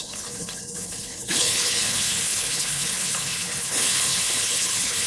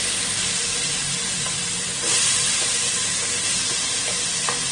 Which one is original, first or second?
second